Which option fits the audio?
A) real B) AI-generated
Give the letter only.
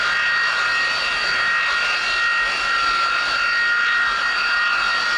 A